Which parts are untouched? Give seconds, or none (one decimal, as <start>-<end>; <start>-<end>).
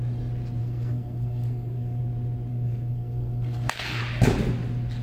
0.0-0.6; 2.0-2.5; 4.0-5.0